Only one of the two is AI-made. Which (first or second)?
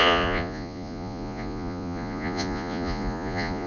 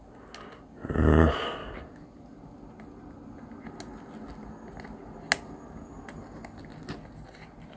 first